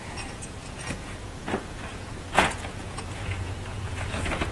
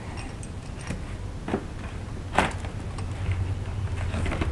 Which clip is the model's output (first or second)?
first